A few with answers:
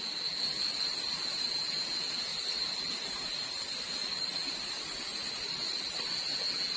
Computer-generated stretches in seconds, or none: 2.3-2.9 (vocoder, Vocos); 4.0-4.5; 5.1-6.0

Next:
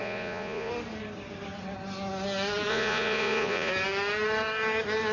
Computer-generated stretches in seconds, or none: 0.0-0.7 (vocoder, Vocos); 2.7-3.7

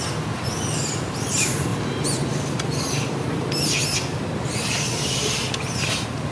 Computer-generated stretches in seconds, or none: none

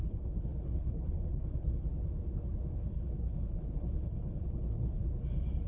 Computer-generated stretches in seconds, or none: 0.0-1.9 (codec, HILCodec); 2.7-5.0

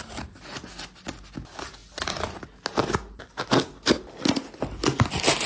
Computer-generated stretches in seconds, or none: none